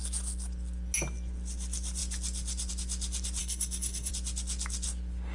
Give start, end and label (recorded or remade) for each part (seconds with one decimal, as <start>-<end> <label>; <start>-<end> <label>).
0.0-3.4 recorded; 3.4-4.1 remade; 4.1-5.3 recorded